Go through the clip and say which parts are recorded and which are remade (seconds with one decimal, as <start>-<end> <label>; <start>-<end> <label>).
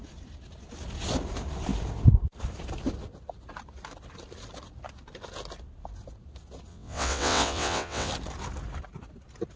0.0-6.7 recorded; 6.7-8.1 remade; 8.1-9.6 recorded